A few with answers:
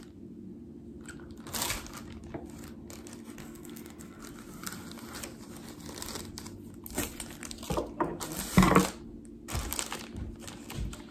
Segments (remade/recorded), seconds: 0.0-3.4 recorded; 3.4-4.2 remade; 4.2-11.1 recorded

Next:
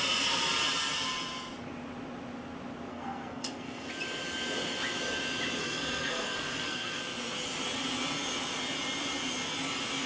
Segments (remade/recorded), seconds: 0.0-2.9 recorded; 2.9-3.9 remade; 3.9-5.6 recorded; 5.6-7.0 remade; 7.0-10.1 recorded

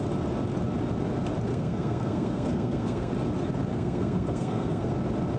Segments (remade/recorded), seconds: 0.0-1.5 recorded; 1.5-3.1 remade; 3.1-3.7 recorded; 3.7-4.9 remade; 4.9-5.4 recorded

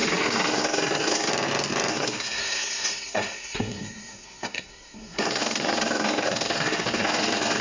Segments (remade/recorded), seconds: 0.0-1.3 remade; 1.3-1.9 recorded; 1.9-7.6 remade